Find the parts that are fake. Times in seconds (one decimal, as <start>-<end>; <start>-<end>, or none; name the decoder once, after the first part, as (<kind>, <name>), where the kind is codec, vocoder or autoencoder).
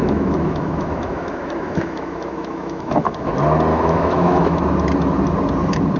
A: 0.0-3.3 (autoencoder, DAC-VAE); 3.7-4.6